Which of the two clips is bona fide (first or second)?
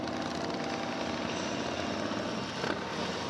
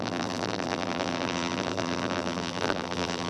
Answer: first